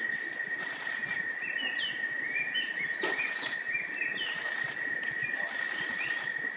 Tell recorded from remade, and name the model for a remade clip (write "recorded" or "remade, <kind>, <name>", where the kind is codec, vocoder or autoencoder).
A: recorded